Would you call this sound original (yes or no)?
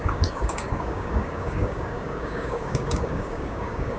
no